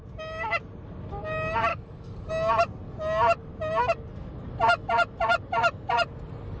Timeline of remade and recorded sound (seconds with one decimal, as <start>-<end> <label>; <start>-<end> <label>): 0.0-1.7 recorded; 1.7-2.3 remade; 2.3-6.6 recorded